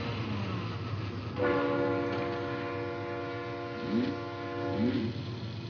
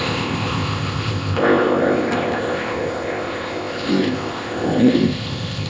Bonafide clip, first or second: first